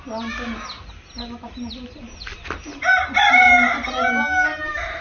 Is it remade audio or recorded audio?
recorded